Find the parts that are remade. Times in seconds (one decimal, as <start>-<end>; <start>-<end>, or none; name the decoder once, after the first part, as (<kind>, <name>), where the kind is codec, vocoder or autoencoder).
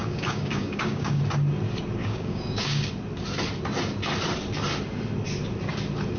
0.0-1.2 (codec, DAC); 2.0-2.9